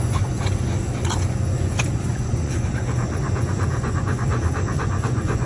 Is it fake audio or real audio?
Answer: fake